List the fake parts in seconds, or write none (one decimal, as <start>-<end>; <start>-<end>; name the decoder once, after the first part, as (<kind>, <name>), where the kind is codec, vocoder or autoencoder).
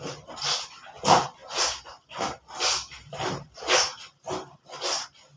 none